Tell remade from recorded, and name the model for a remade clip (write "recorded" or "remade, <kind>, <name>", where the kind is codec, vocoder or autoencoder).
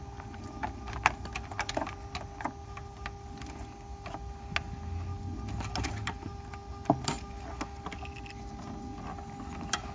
recorded